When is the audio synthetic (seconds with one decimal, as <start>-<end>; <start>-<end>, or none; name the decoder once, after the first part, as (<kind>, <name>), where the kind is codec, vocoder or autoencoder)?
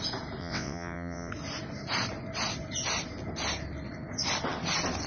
0.4-1.3 (vocoder, WaveNeXt)